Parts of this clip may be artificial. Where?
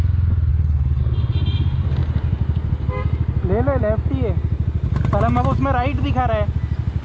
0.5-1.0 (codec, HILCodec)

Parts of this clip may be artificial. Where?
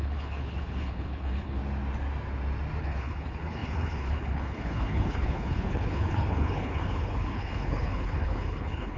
0.0-1.6 (codec, HILCodec); 2.8-9.0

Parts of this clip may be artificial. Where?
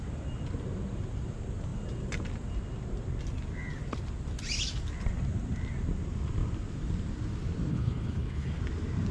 7.7-8.6 (codec, HILCodec)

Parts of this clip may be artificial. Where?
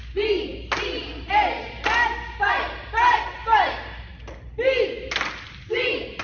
none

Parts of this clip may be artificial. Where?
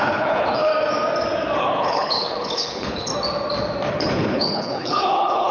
0.0-0.7 (codec, HILCodec); 1.6-3.1; 3.9-5.5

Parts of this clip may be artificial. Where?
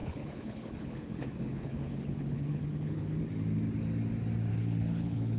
0.0-3.2 (codec, HILCodec); 4.5-5.4